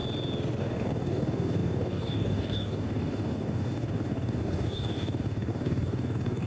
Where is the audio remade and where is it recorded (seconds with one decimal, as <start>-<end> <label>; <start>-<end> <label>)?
0.0-0.6 recorded; 0.6-6.5 remade